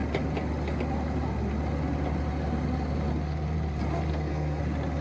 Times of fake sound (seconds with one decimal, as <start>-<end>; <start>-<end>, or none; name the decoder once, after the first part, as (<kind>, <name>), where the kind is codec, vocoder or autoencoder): 4.1-4.6 (codec, SNAC)